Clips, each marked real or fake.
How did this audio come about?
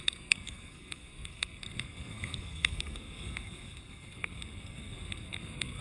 fake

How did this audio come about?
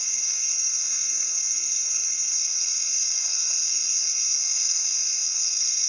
fake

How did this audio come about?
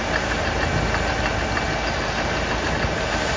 real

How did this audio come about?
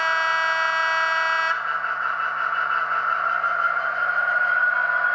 real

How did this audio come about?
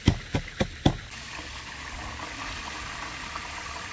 real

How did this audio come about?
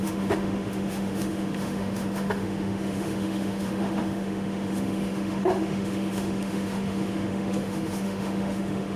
fake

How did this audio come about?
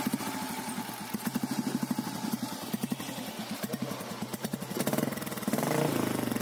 real